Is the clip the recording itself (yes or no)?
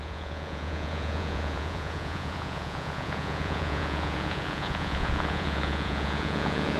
no